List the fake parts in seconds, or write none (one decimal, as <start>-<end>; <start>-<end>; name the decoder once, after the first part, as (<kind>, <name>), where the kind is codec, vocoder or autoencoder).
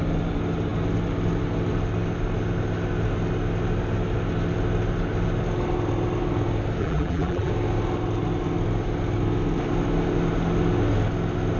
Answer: 6.8-7.5 (vocoder, BigVGAN v2)